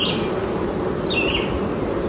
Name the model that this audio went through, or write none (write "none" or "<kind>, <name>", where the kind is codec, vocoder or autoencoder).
none